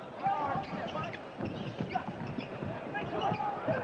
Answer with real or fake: fake